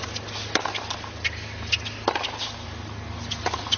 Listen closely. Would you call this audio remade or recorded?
recorded